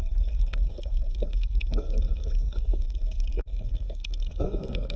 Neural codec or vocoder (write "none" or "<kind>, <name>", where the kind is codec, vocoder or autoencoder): codec, SNAC